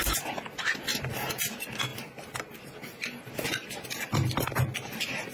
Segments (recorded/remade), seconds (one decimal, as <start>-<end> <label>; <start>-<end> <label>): 0.0-5.3 recorded